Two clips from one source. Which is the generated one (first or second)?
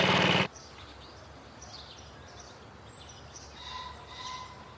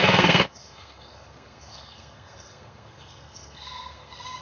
second